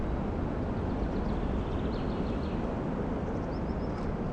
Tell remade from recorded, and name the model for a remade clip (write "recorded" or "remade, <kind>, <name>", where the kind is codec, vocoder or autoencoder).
recorded